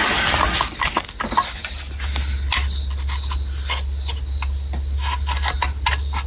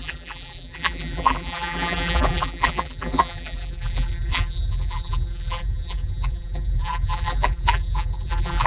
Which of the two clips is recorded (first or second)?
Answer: first